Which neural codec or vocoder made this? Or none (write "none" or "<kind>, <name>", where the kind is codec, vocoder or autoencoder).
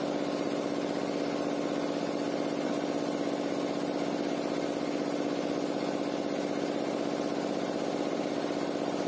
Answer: none